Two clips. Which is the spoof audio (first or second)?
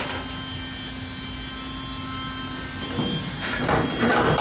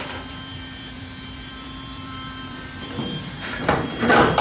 second